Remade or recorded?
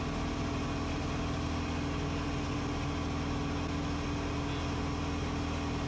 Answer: recorded